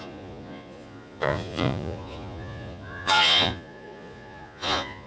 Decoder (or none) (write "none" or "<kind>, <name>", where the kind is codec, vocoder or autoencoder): vocoder, Vocos